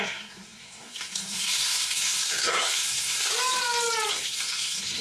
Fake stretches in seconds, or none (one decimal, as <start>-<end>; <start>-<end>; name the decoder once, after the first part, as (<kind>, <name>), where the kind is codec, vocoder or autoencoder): 0.0-3.3 (codec, SNAC); 4.1-5.0